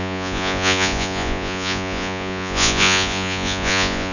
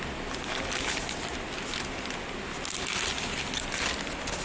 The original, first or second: second